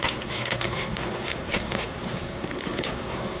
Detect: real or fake fake